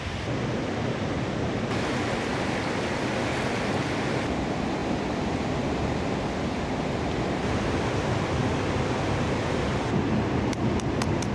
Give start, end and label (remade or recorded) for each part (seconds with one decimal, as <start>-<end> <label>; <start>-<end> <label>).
0.0-11.3 recorded